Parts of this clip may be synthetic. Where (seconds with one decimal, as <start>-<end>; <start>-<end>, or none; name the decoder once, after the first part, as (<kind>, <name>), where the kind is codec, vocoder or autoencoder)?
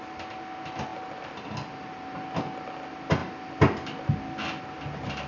none